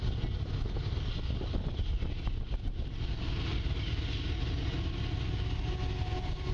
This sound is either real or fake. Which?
real